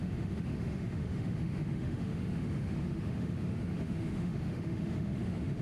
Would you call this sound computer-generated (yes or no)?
yes